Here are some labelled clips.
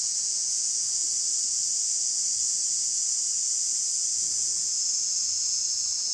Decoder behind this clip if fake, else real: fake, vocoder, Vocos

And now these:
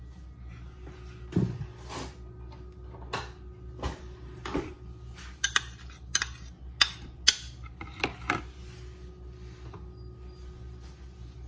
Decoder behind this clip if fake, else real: real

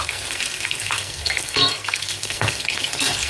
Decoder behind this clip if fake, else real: fake, codec, SNAC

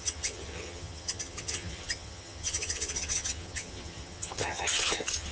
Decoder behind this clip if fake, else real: fake, vocoder, HiFi-GAN